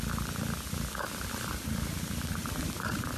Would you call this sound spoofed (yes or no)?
no